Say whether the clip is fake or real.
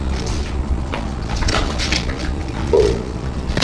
fake